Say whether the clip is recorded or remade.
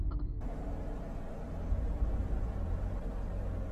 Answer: remade